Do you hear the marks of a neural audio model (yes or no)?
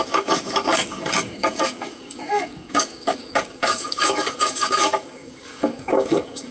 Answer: yes